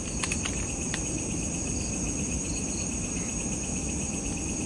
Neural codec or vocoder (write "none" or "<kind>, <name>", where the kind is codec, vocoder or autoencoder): none